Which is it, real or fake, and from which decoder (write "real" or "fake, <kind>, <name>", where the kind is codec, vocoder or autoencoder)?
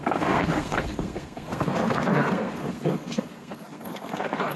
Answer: fake, codec, SNAC